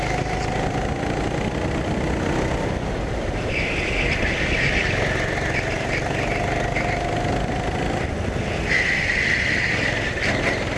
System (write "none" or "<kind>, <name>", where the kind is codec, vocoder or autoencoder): none